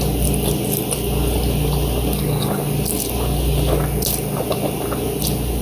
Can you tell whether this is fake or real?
real